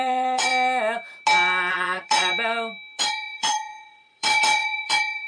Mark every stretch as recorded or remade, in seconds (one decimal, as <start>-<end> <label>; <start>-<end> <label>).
0.0-0.5 remade; 0.5-1.7 recorded; 1.7-2.3 remade; 2.3-3.0 recorded; 3.0-5.3 remade